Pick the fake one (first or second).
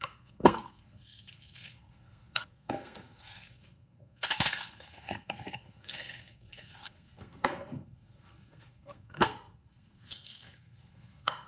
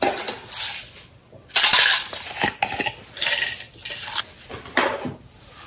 first